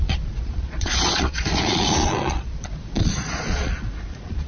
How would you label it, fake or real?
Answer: fake